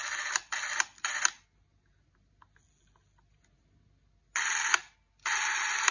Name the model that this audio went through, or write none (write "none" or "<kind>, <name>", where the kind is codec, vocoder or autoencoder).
none